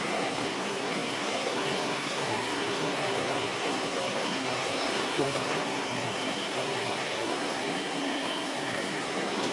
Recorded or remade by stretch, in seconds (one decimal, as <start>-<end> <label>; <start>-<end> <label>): 0.0-9.5 remade